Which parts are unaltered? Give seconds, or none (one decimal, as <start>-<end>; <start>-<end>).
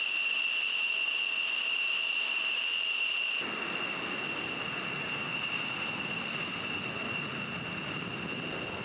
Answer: 0.0-5.3; 6.2-8.8